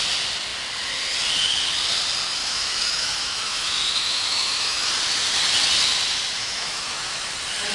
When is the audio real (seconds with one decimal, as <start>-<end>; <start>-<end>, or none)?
0.0-2.4; 4.9-6.4; 7.3-7.7